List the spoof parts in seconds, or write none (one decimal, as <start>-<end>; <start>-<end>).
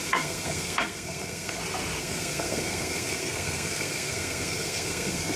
0.0-1.6; 2.0-5.4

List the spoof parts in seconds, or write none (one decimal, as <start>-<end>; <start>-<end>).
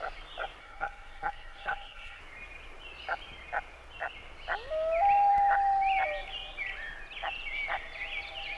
0.6-2.2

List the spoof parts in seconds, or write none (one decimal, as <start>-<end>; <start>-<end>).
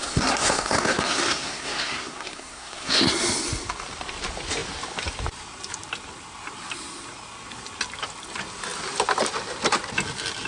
0.0-3.0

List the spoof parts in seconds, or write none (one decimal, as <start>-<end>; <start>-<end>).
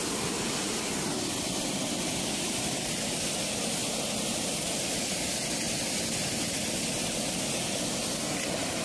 none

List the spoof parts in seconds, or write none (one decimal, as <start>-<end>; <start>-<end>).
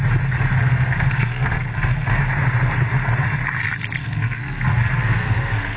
0.6-2.2; 4.0-5.8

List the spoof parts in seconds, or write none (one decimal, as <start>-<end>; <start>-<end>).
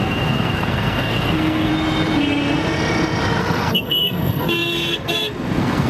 0.0-1.7; 3.4-5.9